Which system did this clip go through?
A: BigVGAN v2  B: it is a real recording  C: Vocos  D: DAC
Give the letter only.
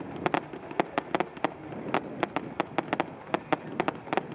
B